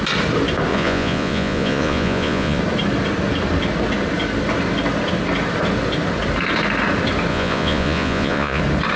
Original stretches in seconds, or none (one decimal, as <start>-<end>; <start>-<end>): 0.0-0.7; 2.6-7.3; 8.6-9.0